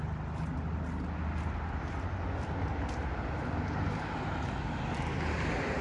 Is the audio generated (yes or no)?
no